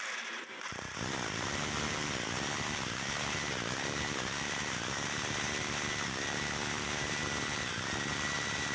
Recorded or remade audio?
recorded